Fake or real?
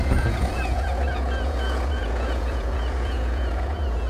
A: fake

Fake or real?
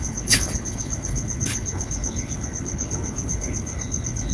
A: fake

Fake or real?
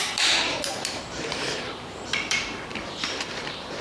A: fake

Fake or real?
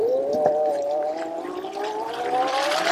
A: real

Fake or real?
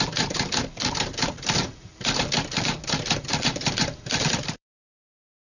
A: fake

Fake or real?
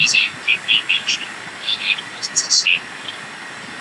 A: fake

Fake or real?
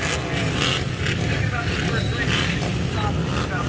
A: real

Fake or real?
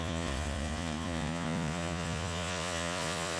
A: fake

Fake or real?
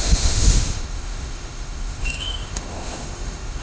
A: fake